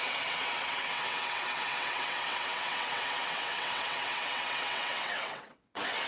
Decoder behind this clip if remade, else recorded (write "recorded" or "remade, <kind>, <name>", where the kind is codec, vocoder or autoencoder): remade, vocoder, WaveNeXt